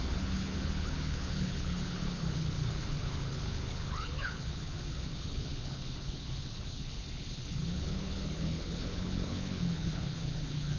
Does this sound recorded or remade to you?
remade